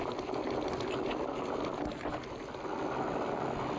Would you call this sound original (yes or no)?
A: yes